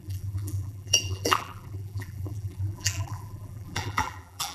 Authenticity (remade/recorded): remade